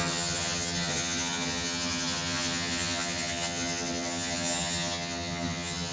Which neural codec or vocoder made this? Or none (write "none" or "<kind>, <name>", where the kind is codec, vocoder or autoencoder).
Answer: vocoder, HiFi-GAN